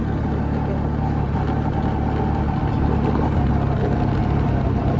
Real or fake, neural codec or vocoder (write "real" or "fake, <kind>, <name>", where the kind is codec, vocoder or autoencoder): real